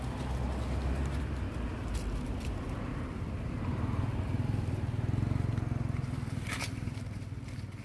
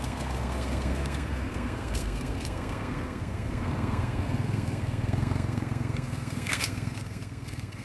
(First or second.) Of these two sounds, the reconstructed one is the second